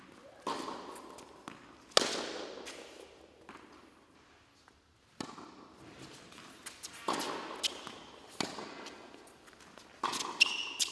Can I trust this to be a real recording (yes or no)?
yes